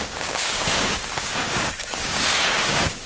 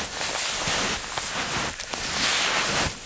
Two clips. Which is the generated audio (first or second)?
first